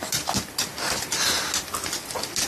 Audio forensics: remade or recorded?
recorded